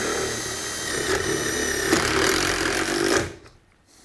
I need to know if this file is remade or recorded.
recorded